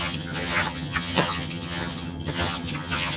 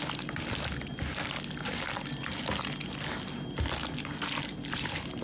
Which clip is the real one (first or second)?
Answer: second